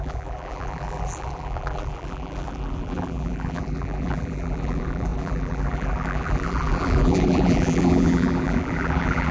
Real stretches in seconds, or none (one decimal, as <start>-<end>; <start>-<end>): none